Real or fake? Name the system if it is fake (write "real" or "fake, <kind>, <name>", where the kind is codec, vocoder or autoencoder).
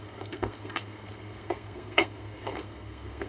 fake, codec, SNAC